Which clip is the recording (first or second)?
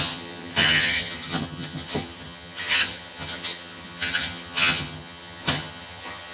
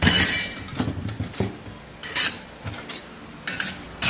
second